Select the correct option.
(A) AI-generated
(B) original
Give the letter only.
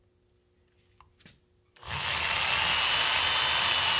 B